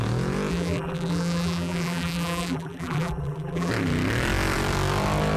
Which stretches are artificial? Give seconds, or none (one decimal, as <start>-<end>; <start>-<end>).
0.5-3.7